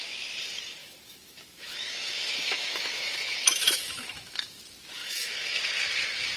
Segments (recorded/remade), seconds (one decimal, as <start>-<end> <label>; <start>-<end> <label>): 0.0-0.8 recorded; 0.8-4.6 remade; 4.6-5.0 recorded; 5.0-5.6 remade; 5.6-6.4 recorded